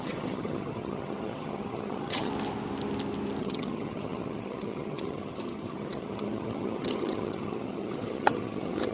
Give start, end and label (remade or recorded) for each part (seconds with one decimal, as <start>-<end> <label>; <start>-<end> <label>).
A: 0.0-2.3 remade; 2.3-3.4 recorded; 3.4-8.9 remade